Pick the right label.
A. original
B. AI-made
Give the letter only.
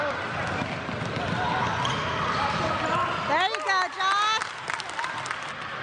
A